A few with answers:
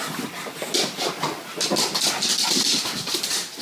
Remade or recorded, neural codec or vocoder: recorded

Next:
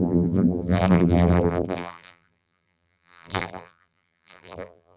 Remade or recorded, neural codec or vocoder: remade, vocoder, BigVGAN v2